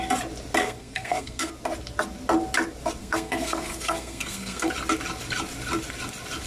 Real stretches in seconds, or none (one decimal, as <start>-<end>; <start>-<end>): 0.0-0.6; 1.5-3.0; 4.7-6.5